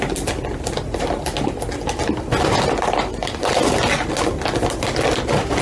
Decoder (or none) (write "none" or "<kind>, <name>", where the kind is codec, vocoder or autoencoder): none